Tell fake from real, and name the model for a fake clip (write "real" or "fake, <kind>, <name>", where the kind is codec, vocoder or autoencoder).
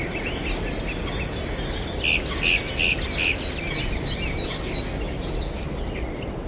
real